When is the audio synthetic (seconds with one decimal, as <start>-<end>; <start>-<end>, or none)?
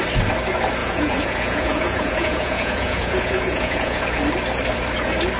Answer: 0.8-4.0